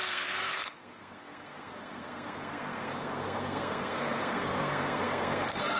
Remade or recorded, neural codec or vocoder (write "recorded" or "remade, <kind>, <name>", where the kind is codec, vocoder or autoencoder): remade, codec, SNAC